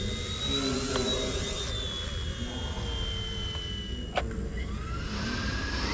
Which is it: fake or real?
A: real